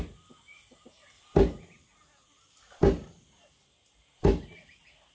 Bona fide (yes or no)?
yes